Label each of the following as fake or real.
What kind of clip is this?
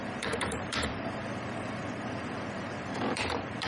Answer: fake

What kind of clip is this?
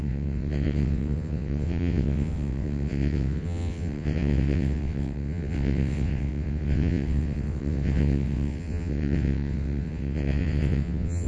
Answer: fake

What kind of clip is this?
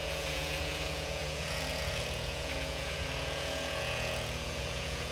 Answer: fake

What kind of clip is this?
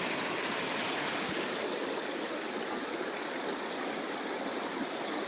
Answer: fake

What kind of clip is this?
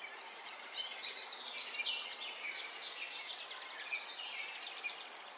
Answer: real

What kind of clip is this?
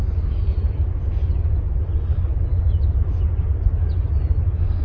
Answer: real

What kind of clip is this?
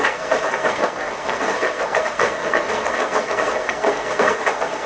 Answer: fake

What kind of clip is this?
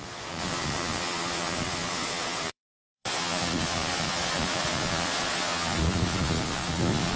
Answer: fake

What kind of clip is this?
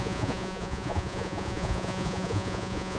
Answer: fake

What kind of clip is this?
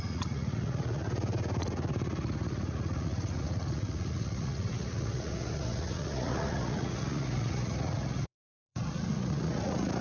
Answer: fake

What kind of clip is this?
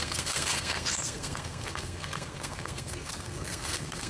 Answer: fake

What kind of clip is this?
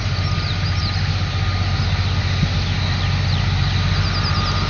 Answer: real